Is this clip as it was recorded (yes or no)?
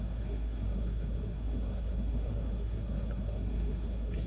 no